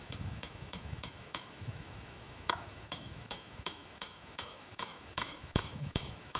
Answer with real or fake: fake